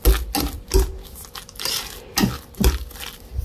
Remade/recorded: recorded